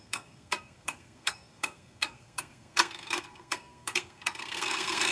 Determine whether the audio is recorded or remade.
remade